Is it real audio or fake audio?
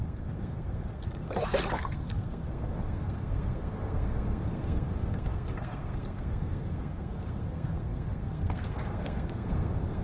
fake